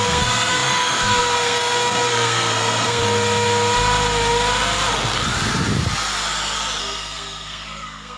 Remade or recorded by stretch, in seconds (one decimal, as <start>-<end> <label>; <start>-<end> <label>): 0.0-3.0 remade; 3.0-6.8 recorded; 6.8-8.2 remade